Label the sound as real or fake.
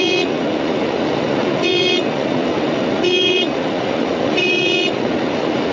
fake